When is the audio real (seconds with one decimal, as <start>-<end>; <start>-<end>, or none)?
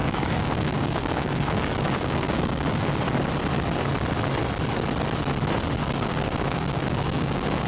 2.9-5.8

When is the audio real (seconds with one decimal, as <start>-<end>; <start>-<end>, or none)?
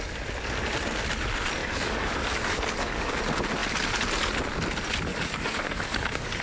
0.0-1.6; 3.2-5.1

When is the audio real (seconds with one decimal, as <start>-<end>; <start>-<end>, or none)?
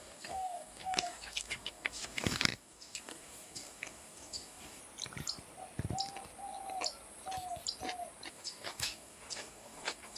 4.8-8.3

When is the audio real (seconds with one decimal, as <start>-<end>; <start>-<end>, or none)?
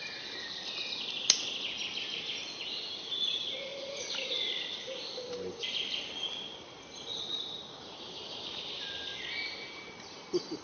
0.0-10.6